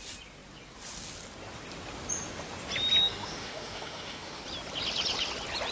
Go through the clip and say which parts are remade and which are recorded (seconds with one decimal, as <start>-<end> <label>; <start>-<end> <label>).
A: 0.0-3.0 recorded; 3.0-4.4 remade; 4.4-5.7 recorded